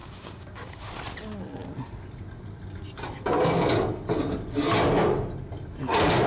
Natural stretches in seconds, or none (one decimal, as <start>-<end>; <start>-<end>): 0.8-6.3